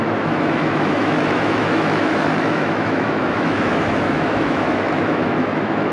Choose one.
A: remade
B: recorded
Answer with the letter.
A